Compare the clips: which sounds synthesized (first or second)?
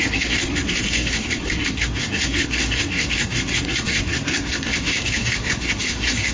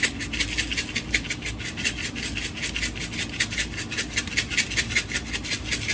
first